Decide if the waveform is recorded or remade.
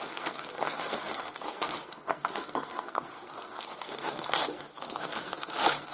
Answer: remade